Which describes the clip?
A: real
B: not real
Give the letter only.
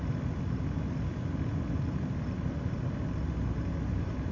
A